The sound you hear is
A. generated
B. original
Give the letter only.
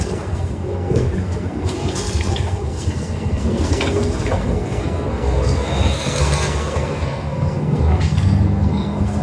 A